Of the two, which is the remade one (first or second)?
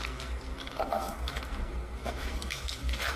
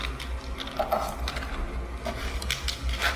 first